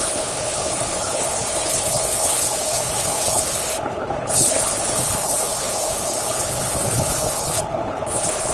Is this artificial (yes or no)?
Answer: yes